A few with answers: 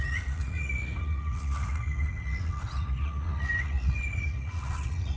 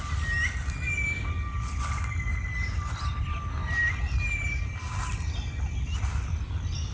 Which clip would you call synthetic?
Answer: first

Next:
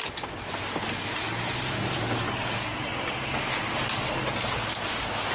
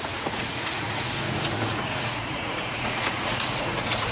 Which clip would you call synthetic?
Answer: second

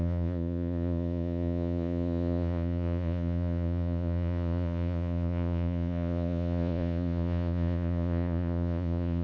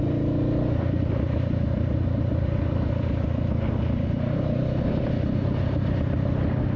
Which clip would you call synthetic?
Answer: first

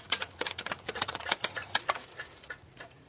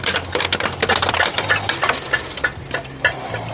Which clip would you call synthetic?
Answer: first